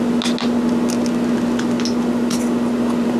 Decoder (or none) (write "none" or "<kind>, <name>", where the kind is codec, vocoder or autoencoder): none